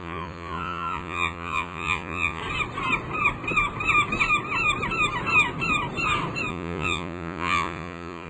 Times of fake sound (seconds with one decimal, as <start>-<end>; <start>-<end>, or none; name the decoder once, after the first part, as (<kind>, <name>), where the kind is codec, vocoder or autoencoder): 0.0-2.4 (vocoder, Vocos); 6.5-8.3